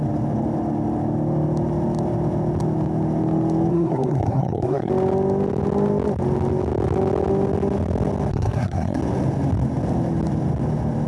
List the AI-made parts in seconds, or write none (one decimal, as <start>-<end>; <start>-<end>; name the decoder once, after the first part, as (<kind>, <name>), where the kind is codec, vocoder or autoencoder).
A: 3.7-4.9 (codec, SNAC); 8.3-9.0